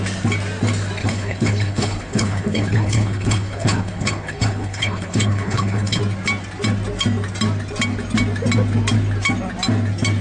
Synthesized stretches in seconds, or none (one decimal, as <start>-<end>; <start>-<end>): 1.0-6.0